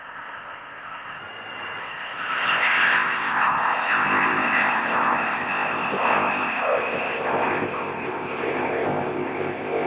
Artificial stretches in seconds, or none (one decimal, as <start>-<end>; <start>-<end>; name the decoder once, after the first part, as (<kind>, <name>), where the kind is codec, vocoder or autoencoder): 0.0-1.2 (codec, ZipCodec); 1.8-9.9